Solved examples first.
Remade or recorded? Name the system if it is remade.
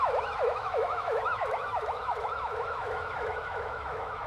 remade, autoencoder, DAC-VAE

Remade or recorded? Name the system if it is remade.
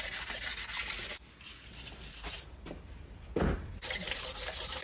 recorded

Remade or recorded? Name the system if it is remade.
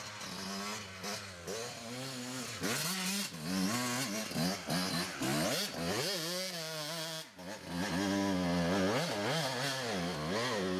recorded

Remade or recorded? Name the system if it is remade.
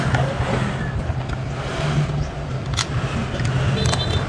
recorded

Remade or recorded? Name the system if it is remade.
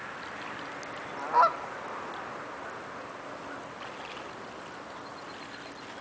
recorded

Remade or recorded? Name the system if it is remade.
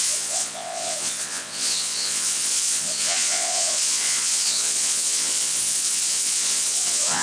remade, vocoder, Vocos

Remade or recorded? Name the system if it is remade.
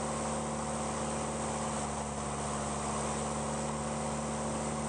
recorded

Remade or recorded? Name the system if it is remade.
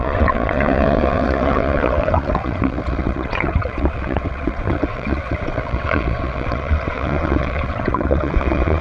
remade, vocoder, WaveNeXt